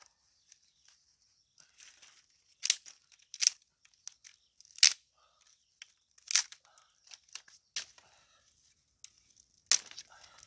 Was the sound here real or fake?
real